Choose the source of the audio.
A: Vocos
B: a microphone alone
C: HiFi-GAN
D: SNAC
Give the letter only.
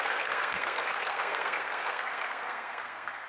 D